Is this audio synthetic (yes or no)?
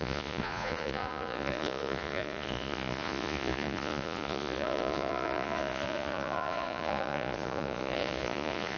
yes